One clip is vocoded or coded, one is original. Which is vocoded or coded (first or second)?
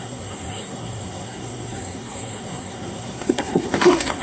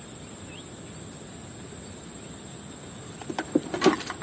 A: first